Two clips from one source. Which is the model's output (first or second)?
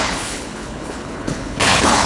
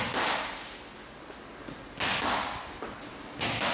first